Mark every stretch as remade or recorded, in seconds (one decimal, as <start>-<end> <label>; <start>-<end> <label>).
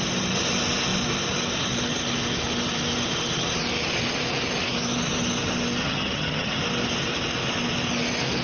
0.0-5.8 recorded; 5.8-6.6 remade; 6.6-8.4 recorded